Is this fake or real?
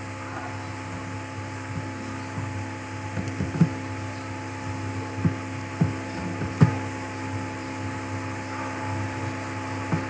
real